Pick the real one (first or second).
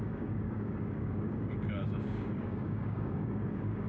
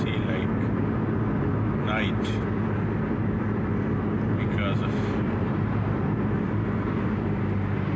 second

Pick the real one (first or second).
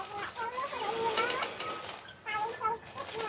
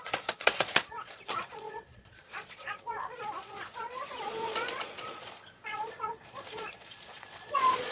first